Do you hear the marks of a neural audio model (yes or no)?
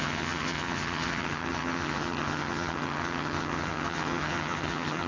yes